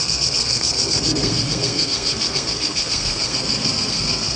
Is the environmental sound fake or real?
fake